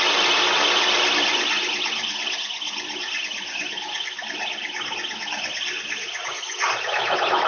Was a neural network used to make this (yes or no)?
no